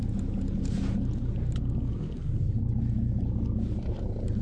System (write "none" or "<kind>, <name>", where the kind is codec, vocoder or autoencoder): none